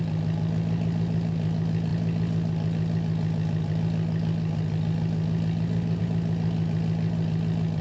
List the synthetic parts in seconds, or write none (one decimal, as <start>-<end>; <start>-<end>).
none